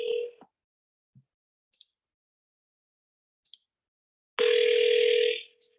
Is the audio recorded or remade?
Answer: recorded